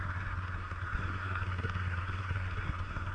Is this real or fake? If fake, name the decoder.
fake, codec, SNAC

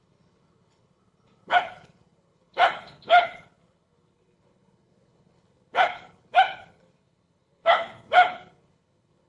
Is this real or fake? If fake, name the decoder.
fake, codec, HILCodec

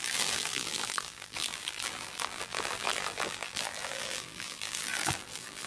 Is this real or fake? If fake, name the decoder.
fake, vocoder, BigVGAN v2